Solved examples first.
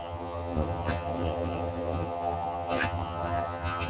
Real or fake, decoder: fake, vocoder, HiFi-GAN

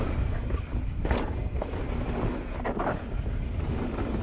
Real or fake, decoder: real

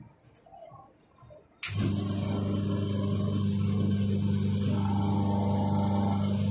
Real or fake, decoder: real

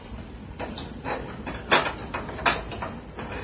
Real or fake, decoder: real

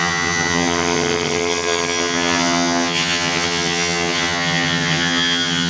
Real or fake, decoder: fake, vocoder, HiFi-GAN